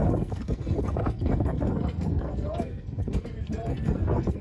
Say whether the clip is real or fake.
fake